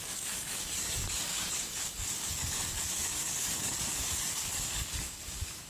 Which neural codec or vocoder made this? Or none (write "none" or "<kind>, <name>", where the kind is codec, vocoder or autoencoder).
codec, DAC